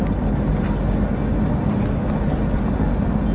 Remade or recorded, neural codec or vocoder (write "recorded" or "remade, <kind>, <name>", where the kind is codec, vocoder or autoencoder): recorded